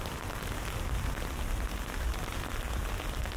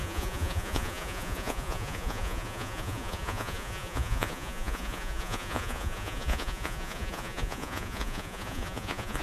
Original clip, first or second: first